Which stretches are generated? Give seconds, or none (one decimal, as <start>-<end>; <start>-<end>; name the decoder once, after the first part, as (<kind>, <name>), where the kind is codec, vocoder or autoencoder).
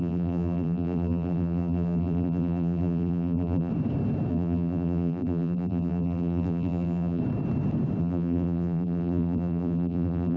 0.0-3.7 (vocoder, BigVGAN v2); 4.3-7.2; 8.0-10.4